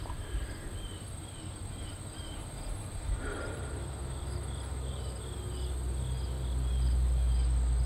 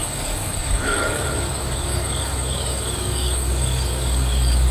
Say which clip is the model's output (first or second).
second